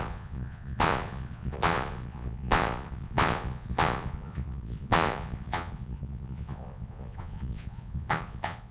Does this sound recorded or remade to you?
remade